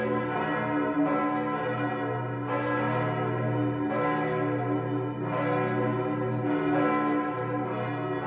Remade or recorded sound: recorded